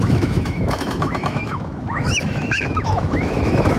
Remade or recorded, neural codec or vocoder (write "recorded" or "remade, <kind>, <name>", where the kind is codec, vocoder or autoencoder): remade, autoencoder, DAC-VAE